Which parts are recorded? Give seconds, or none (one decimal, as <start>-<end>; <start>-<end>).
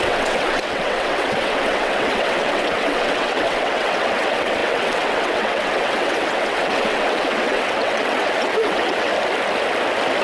9.1-10.2